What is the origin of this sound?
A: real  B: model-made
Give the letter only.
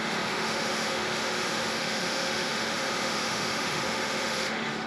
B